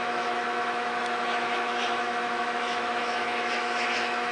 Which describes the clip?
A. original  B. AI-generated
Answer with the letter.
B